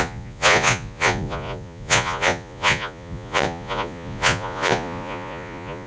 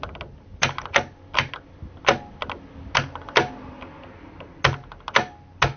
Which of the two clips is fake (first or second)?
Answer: first